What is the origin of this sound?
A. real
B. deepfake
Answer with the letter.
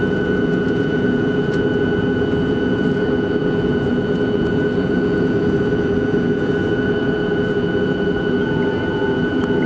B